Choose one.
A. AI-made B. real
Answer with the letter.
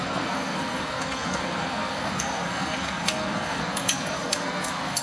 A